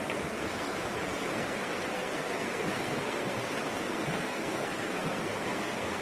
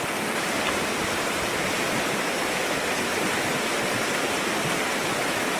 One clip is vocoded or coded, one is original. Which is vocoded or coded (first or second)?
first